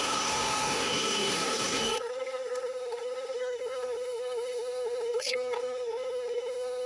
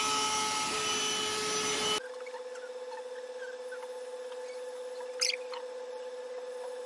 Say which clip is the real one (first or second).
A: second